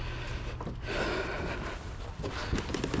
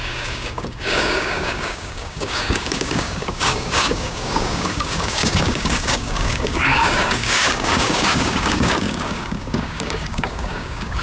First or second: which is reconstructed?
second